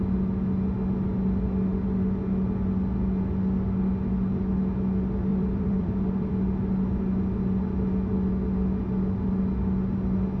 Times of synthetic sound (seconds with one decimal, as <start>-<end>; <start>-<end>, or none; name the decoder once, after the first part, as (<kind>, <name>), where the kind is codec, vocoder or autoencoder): 5.3-6.3 (vocoder, BigVGAN v2)